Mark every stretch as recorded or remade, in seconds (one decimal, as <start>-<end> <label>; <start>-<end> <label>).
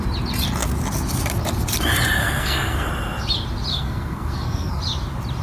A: 0.0-2.2 recorded; 2.2-2.9 remade; 2.9-3.7 recorded; 3.7-4.8 remade; 4.8-5.4 recorded